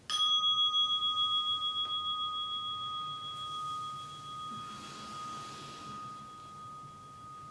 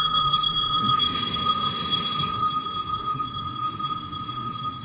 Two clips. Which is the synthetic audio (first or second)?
second